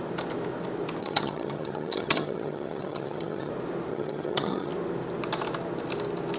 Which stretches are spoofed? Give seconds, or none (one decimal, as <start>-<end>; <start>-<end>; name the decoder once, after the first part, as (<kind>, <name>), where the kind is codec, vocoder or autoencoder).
1.0-3.5 (vocoder, HiFi-GAN); 3.9-4.7